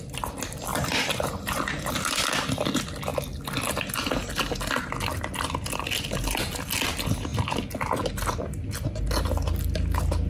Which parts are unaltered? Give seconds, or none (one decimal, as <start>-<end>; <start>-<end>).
0.0-0.7; 1.9-10.3

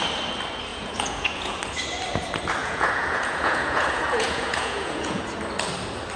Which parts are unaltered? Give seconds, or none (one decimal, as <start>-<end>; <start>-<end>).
0.0-0.7; 1.6-2.6; 5.2-6.2

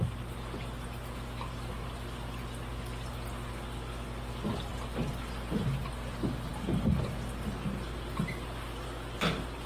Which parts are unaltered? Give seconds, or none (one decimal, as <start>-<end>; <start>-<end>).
0.0-9.7

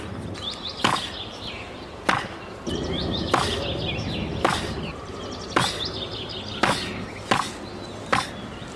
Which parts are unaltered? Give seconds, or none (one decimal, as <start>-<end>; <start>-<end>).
0.0-4.5; 5.1-8.8

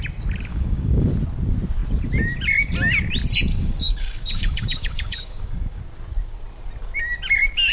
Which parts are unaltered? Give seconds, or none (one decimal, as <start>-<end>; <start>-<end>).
0.0-0.5; 1.1-3.5; 5.8-7.7

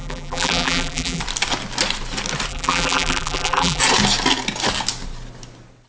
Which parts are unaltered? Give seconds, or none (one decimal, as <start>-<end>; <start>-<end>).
1.2-2.5; 3.8-5.9

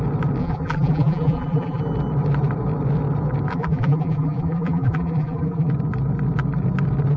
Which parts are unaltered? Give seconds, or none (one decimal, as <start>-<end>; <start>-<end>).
0.0-0.4; 1.8-3.5; 5.7-7.2